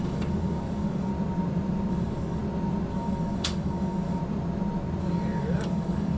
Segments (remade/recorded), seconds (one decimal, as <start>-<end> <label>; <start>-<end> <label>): 0.0-1.1 remade; 1.1-1.9 recorded; 1.9-2.4 remade; 2.4-2.9 recorded; 2.9-4.2 remade; 4.2-5.0 recorded; 5.0-6.2 remade